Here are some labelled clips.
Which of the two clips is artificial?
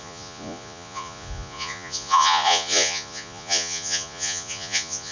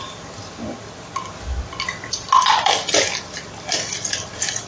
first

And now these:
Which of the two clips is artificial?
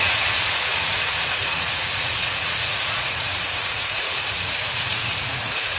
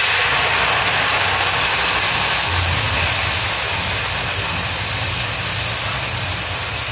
first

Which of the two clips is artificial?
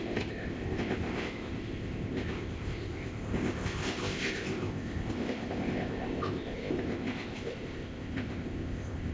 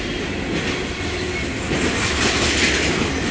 first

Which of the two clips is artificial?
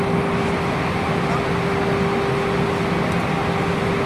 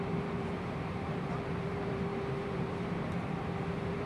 second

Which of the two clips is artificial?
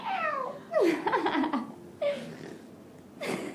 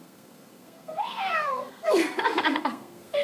second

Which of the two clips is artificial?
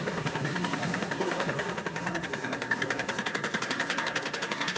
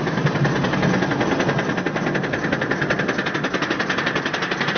first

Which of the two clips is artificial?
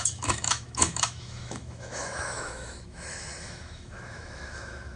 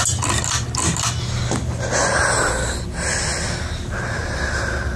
first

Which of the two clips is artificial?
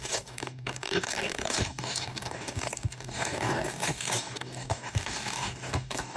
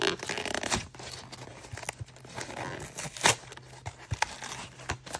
first